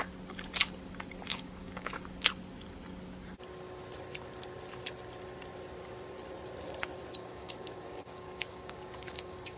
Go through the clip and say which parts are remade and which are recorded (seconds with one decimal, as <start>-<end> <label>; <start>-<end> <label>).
0.0-1.3 recorded; 1.3-2.0 remade; 2.0-7.2 recorded; 7.2-9.6 remade